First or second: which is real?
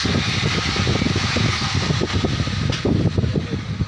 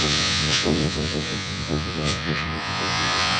first